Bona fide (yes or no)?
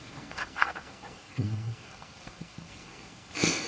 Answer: no